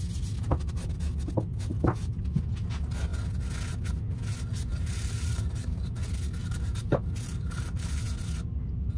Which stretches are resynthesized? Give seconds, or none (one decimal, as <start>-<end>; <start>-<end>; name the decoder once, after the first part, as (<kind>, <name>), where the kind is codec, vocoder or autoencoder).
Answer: 4.7-6.0 (vocoder, BigVGAN v2); 6.4-8.1